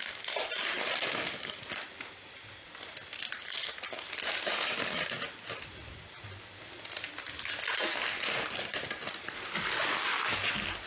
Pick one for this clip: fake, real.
real